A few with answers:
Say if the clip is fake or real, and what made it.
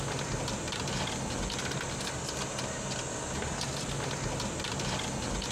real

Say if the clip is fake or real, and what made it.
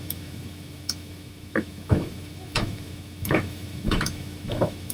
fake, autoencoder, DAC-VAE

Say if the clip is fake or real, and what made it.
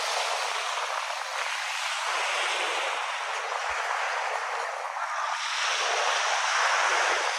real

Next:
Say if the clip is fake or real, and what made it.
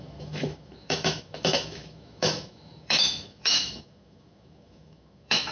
fake, autoencoder, DAC-VAE